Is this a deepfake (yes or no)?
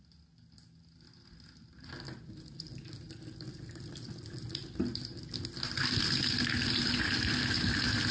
no